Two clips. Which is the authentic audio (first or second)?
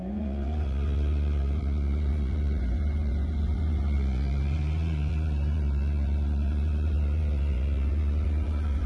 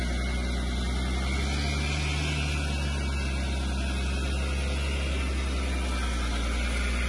second